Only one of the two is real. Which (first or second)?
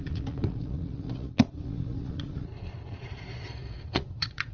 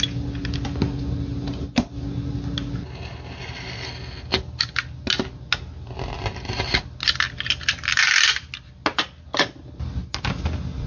second